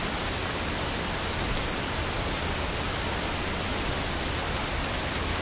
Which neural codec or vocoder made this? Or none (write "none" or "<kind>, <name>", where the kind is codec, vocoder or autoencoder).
none